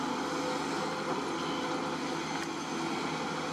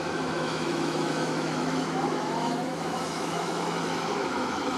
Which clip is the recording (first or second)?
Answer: first